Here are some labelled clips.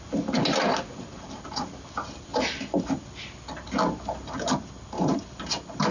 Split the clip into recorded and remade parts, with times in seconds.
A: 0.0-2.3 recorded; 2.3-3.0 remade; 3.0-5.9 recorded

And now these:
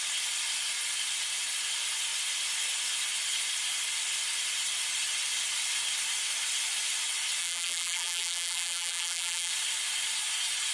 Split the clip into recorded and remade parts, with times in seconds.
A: 0.0-7.4 recorded; 7.4-9.5 remade; 9.5-10.7 recorded

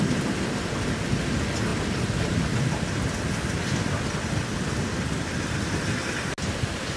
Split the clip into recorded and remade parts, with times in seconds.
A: 0.0-7.0 recorded

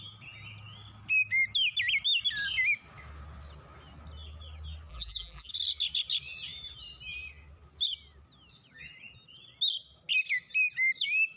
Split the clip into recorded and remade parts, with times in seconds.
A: 0.0-4.9 recorded; 4.9-5.5 remade; 5.5-11.4 recorded